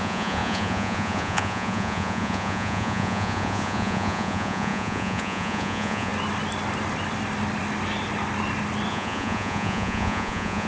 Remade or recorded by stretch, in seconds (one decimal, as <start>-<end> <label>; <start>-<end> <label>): 0.0-6.1 remade; 6.1-8.9 recorded; 8.9-10.7 remade